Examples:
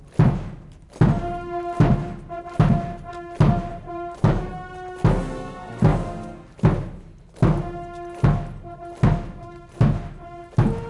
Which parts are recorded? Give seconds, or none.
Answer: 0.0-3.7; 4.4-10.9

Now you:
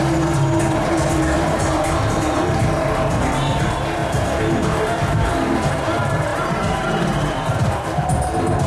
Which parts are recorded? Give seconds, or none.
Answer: 0.0-6.3; 7.3-8.7

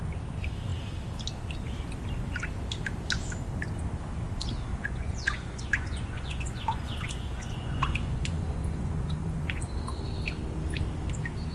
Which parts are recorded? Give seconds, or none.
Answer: 0.0-4.7; 9.6-11.5

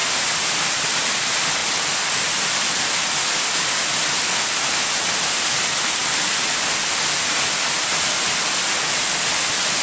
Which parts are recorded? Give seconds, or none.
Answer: 0.0-9.8

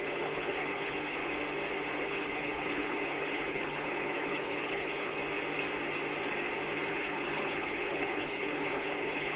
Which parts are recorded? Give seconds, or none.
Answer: 1.2-1.9; 5.2-6.9

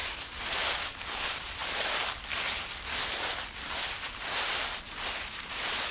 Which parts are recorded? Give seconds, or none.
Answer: 0.0-0.5; 1.6-5.1